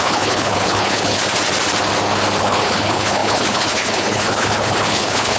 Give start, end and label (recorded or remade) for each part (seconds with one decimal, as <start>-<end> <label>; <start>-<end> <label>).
0.0-1.2 remade; 1.2-2.4 recorded; 2.4-5.4 remade